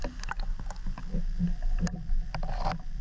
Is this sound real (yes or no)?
yes